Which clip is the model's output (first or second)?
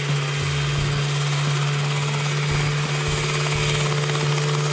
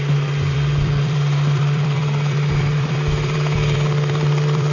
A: second